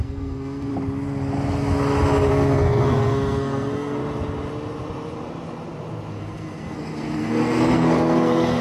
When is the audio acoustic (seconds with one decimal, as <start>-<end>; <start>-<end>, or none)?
0.7-2.3; 4.0-6.1